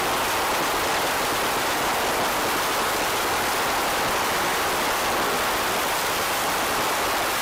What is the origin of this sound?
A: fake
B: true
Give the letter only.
B